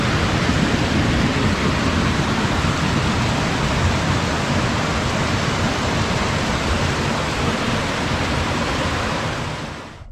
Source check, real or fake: real